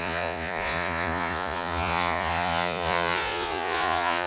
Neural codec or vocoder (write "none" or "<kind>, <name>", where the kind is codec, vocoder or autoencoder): vocoder, Vocos